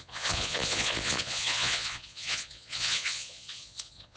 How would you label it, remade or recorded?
remade